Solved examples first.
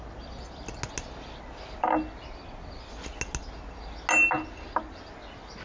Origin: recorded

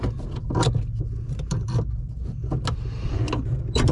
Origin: recorded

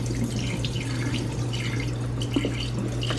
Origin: recorded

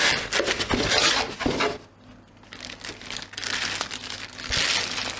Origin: recorded